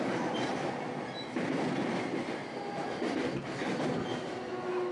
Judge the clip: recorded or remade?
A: recorded